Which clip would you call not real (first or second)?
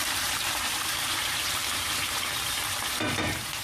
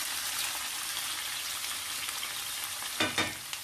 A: first